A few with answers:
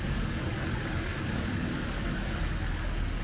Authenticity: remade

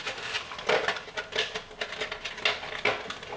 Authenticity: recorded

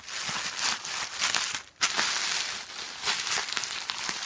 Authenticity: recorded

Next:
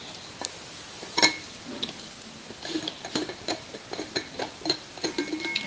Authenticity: recorded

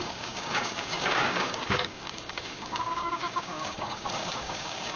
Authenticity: remade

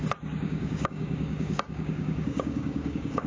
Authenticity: remade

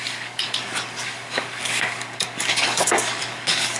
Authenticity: remade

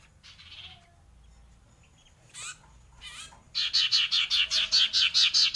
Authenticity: recorded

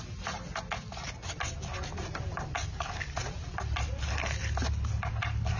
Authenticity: recorded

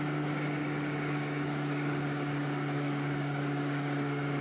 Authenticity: remade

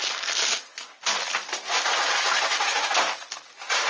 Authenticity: recorded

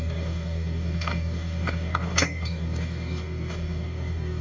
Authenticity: remade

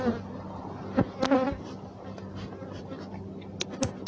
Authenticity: recorded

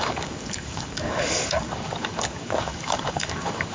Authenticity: remade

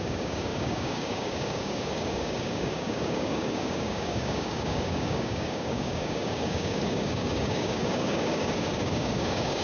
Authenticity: remade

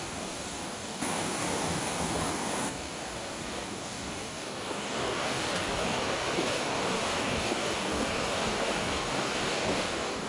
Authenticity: remade